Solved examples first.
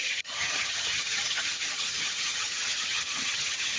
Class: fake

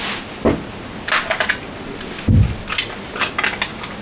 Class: real